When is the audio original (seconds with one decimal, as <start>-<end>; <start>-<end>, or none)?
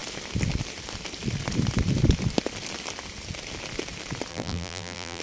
0.0-4.3